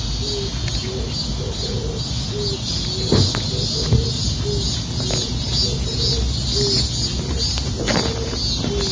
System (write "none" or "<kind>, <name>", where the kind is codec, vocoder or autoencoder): none